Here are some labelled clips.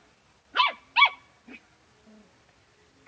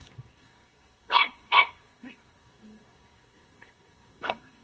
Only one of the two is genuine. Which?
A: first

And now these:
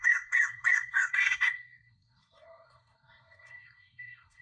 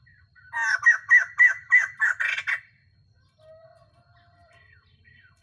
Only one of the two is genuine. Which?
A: second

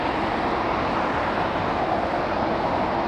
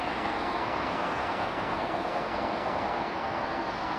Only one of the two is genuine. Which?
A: first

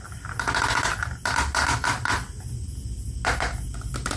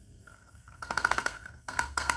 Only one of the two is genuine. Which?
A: first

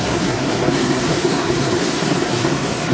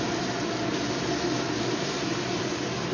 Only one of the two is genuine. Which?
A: second